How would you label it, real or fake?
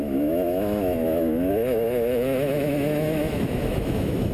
fake